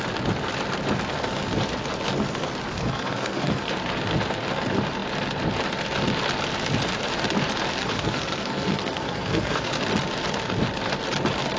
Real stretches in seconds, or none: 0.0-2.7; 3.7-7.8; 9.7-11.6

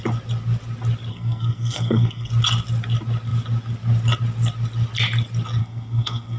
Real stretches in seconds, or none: 0.0-1.1; 2.3-5.6

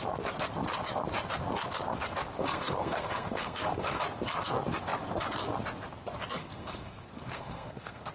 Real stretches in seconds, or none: 0.0-2.4; 4.0-6.4

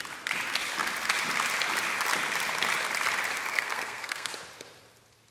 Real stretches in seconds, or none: 0.0-3.5; 4.3-5.3